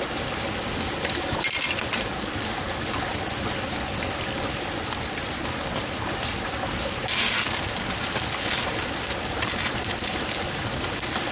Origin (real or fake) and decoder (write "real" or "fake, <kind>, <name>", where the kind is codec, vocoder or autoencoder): real